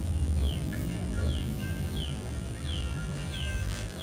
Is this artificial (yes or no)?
yes